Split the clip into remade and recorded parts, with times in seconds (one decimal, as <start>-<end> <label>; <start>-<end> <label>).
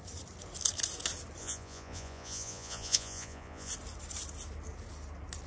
0.0-1.4 recorded; 1.4-3.7 remade; 3.7-5.5 recorded